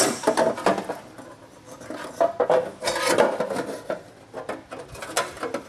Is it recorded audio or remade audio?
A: recorded